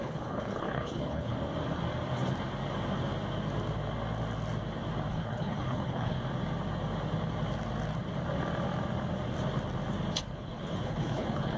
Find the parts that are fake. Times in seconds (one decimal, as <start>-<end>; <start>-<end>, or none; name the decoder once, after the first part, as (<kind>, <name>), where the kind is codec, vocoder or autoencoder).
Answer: 0.0-1.3 (codec, HILCodec); 5.1-6.2; 10.2-11.6